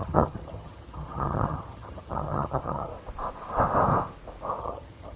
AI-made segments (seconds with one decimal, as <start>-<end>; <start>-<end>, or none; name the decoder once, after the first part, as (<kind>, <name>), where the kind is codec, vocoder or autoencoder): 0.0-2.9 (vocoder, HiFi-GAN); 4.6-5.2